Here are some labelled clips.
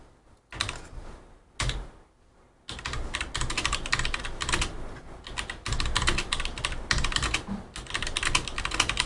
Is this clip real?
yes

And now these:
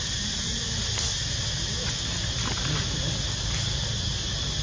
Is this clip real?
yes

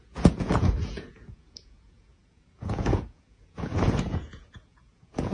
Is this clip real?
no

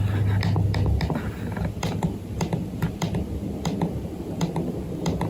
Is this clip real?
yes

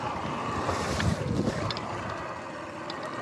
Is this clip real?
yes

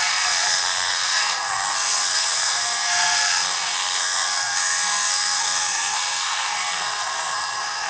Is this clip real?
no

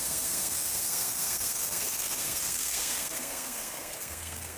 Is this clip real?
no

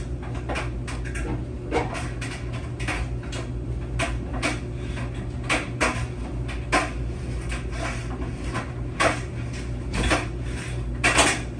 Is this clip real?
yes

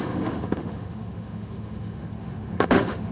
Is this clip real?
no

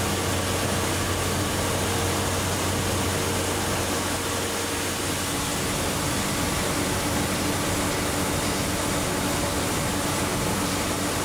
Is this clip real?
yes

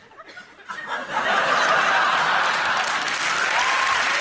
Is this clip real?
yes